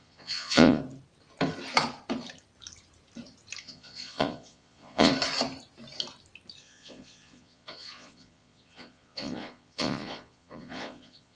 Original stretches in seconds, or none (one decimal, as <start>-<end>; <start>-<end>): 0.8-3.6; 5.1-6.6